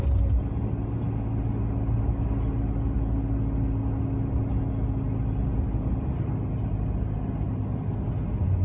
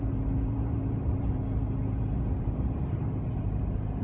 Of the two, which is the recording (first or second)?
first